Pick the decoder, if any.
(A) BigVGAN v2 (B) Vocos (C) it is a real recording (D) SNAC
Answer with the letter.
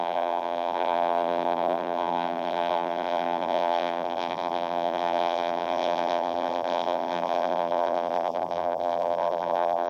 A